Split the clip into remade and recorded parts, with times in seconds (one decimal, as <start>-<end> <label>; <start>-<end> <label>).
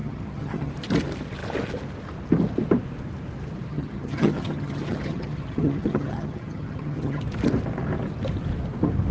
0.0-0.7 remade; 0.7-3.7 recorded; 3.7-7.2 remade; 7.2-9.1 recorded